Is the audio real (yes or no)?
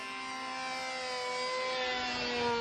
yes